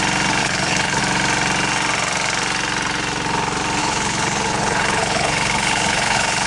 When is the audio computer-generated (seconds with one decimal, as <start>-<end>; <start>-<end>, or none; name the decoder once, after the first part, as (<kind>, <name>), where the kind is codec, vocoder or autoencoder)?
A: 0.4-1.0 (codec, HILCodec); 3.8-6.5